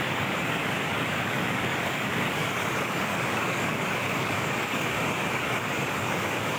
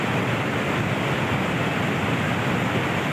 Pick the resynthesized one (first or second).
first